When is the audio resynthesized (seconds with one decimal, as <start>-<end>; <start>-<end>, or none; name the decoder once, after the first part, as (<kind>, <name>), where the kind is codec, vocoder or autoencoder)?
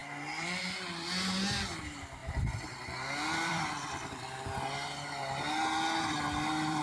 0.0-1.8 (vocoder, BigVGAN v2); 2.2-4.2; 5.2-6.8